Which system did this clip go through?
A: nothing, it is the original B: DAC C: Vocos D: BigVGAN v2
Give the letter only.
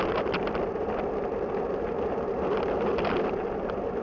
D